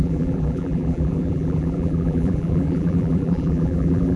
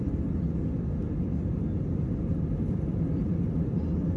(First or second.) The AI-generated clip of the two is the first